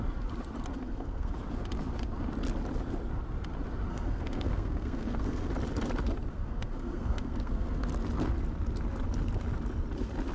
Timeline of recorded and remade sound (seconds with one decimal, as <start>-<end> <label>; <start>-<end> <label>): 0.0-0.7 recorded; 0.7-1.3 remade; 1.3-3.9 recorded; 3.9-5.5 remade; 5.5-6.3 recorded; 6.3-7.9 remade; 7.9-10.3 recorded